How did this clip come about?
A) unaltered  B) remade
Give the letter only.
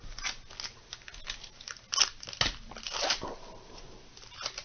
A